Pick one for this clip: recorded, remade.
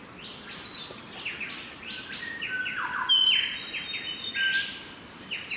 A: recorded